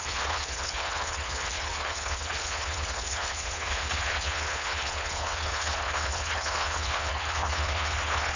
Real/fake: fake